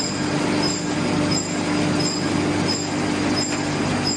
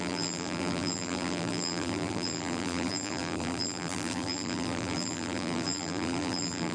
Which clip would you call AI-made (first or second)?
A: second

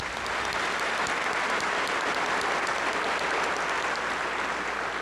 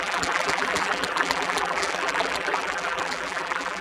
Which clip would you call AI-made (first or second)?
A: second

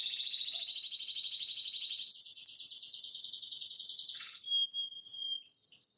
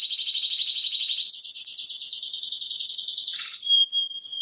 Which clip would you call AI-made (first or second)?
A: second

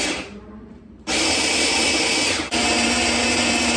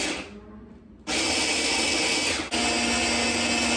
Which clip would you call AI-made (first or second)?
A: first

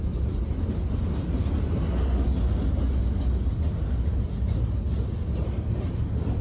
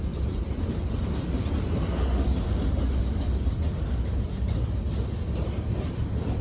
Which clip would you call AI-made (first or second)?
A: second